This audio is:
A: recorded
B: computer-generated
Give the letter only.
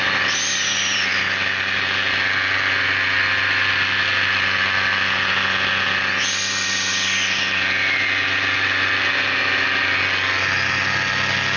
A